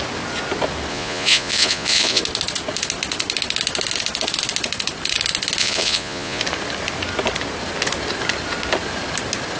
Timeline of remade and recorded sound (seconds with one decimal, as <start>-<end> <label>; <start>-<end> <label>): 0.0-0.9 recorded; 0.9-2.2 remade; 2.2-5.6 recorded; 5.6-6.4 remade; 6.4-9.6 recorded